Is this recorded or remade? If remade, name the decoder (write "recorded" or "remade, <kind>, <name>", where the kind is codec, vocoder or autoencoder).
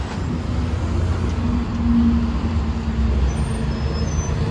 recorded